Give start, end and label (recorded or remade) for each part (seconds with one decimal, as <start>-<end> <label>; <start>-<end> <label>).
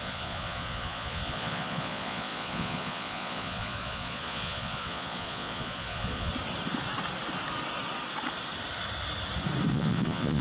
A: 0.0-6.3 remade; 6.3-9.7 recorded; 9.7-10.4 remade